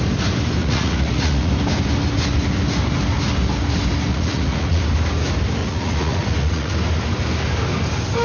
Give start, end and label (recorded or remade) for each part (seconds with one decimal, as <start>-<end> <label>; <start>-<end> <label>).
0.0-0.6 recorded; 0.6-1.5 remade; 1.5-4.1 recorded; 4.1-4.8 remade; 4.8-5.6 recorded; 5.6-6.7 remade; 6.7-8.2 recorded